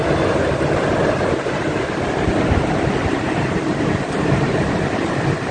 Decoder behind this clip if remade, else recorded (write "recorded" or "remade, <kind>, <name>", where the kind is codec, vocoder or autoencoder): remade, vocoder, BigVGAN v2